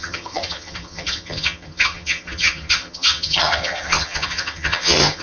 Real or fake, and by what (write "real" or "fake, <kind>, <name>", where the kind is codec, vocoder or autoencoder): fake, vocoder, HiFi-GAN